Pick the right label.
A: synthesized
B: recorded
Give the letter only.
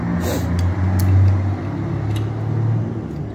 B